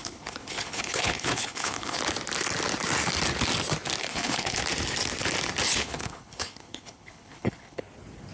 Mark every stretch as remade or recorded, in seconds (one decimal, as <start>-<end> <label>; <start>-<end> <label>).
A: 0.0-2.0 remade; 2.0-4.0 recorded; 4.0-4.6 remade; 4.6-5.8 recorded; 5.8-7.8 remade; 7.8-8.3 recorded